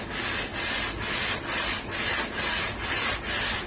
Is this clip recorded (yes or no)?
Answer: yes